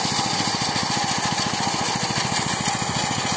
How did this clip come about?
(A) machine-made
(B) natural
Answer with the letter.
B